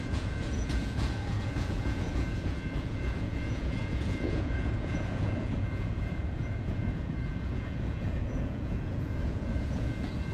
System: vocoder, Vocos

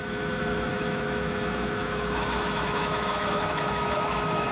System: autoencoder, DAC-VAE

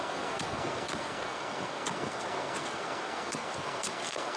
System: codec, SNAC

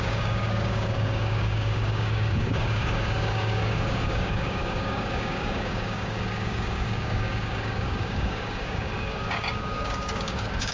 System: codec, DAC